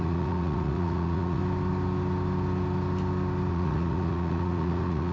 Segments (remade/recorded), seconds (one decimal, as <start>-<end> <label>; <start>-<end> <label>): 0.0-1.4 remade; 1.4-3.5 recorded; 3.5-5.1 remade